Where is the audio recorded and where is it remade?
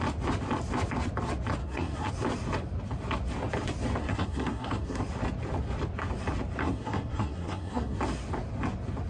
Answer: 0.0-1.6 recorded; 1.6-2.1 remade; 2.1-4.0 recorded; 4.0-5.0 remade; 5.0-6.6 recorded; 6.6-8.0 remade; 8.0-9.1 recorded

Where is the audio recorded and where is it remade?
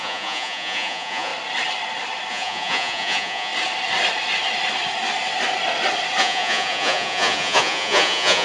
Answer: 0.0-1.3 remade; 1.3-2.3 recorded; 2.3-3.5 remade; 3.5-6.2 recorded; 6.2-8.4 remade